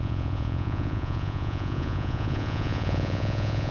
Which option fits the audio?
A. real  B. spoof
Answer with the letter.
B